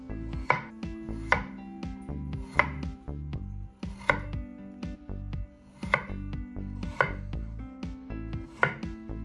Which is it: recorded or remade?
recorded